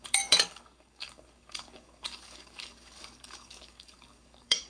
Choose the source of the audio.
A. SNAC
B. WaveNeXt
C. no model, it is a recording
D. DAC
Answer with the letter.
D